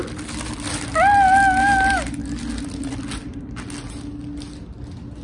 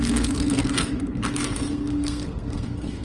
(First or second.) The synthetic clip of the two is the second